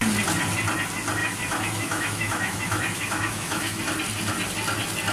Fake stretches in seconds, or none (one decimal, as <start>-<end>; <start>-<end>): 1.2-3.8